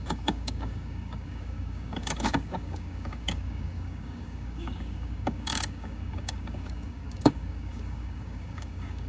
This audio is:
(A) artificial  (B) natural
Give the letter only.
A